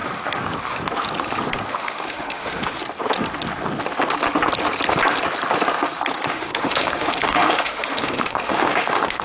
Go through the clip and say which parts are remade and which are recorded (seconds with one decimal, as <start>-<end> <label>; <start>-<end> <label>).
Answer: 0.0-1.7 recorded; 1.7-2.8 remade; 2.8-6.3 recorded; 6.3-9.2 remade